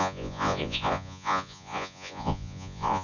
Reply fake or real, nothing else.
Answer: fake